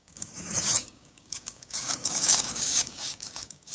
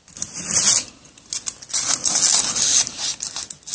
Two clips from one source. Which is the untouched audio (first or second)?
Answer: second